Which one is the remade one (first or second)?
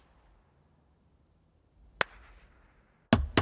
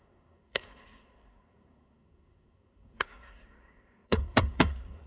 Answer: second